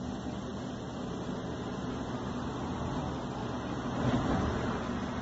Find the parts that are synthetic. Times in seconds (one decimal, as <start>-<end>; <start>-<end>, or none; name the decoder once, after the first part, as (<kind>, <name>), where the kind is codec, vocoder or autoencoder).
3.4-5.2 (vocoder, BigVGAN v2)